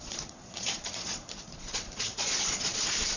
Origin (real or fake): fake